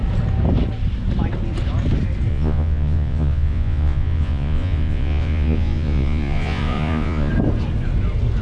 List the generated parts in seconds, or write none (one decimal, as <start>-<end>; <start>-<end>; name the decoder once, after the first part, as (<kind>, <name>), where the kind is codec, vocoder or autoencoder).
2.3-7.3 (vocoder, Vocos)